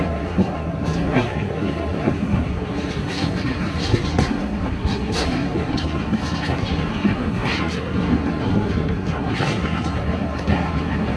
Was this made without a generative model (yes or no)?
no